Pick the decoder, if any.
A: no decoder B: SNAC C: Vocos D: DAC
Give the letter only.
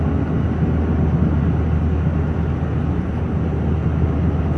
A